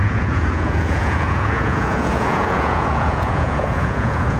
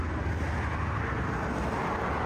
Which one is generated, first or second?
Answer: first